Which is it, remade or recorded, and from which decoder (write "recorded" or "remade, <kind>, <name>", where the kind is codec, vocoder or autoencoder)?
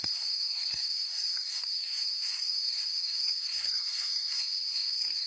remade, codec, SNAC